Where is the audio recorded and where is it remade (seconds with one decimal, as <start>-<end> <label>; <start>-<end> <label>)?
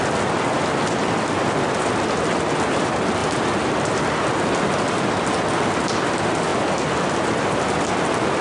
0.0-8.4 recorded